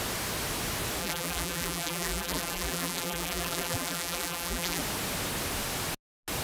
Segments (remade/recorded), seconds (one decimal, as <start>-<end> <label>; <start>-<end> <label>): 0.0-1.0 recorded; 1.0-4.8 remade; 4.8-6.4 recorded